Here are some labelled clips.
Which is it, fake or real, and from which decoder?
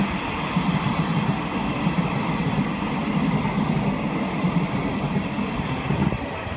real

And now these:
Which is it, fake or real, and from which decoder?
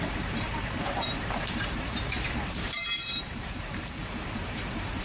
fake, vocoder, BigVGAN v2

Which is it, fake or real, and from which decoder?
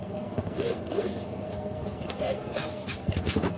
fake, codec, SNAC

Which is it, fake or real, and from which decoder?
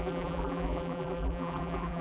fake, vocoder, BigVGAN v2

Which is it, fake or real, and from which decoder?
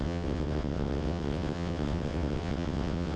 fake, vocoder, WaveNeXt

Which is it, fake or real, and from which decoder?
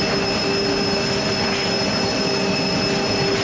real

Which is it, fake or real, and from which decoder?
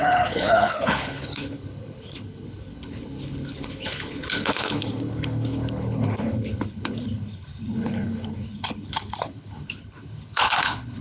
fake, codec, HILCodec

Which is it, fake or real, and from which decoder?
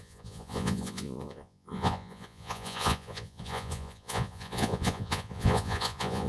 fake, vocoder, Vocos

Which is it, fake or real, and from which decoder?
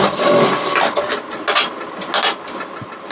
real